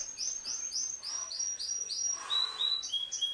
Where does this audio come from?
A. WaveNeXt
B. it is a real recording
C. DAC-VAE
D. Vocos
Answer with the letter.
B